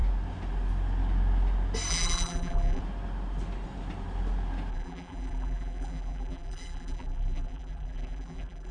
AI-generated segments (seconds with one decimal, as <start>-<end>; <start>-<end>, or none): 1.9-2.8; 4.7-8.7